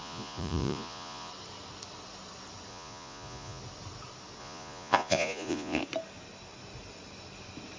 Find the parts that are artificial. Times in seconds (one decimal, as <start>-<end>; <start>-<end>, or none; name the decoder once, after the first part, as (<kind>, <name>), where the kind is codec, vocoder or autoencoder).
0.0-1.3 (vocoder, Vocos); 2.7-3.6; 4.4-5.8